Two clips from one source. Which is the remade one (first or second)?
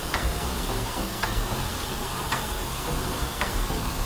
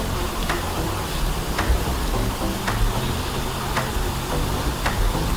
first